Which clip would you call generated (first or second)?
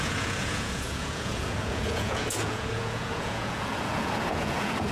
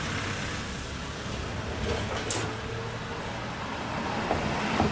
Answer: first